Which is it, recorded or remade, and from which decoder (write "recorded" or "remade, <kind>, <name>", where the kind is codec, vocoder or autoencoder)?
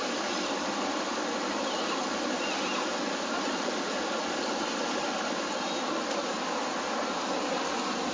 recorded